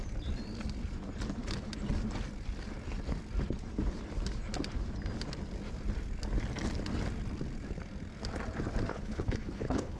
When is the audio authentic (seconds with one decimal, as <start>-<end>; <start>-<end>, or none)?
0.0-8.9